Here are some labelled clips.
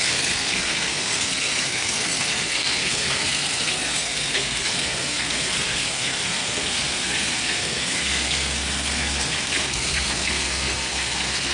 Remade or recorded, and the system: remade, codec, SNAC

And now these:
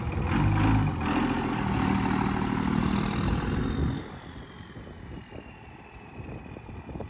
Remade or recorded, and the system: recorded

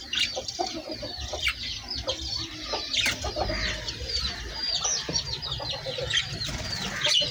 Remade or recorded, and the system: remade, vocoder, BigVGAN v2